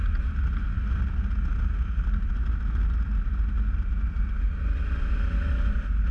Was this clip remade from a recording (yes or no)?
no